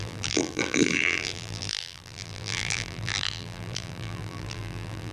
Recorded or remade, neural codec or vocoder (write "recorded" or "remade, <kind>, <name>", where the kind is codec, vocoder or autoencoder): remade, vocoder, BigVGAN v2